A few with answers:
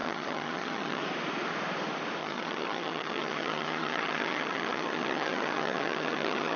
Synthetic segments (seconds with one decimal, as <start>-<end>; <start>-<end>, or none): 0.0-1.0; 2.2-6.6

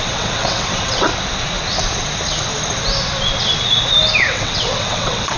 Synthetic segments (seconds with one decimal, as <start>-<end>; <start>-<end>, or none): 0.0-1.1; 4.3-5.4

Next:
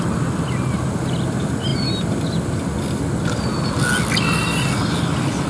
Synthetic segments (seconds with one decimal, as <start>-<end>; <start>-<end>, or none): none

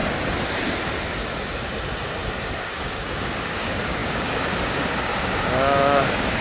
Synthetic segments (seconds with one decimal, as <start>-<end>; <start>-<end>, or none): 2.8-6.4

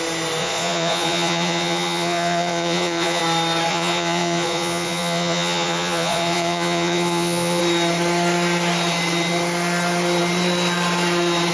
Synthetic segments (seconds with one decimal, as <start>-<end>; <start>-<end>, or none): 0.4-3.2; 3.7-7.6

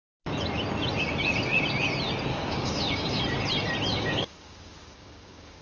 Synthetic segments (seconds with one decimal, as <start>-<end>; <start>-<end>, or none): 2.3-3.2; 3.9-5.6